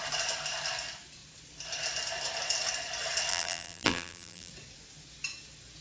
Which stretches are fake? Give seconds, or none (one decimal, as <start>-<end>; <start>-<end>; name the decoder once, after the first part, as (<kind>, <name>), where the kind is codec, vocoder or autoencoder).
3.3-4.5 (vocoder, BigVGAN v2)